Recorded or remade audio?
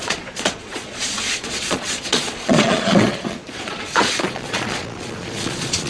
remade